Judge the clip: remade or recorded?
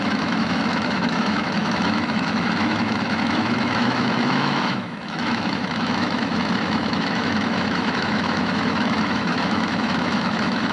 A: remade